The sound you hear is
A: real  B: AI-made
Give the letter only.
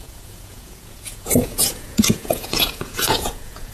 B